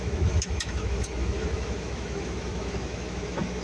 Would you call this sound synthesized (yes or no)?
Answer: yes